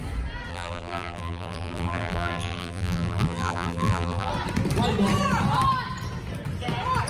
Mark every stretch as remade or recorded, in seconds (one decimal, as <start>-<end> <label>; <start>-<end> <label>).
0.0-0.5 recorded; 0.5-4.3 remade; 4.3-7.1 recorded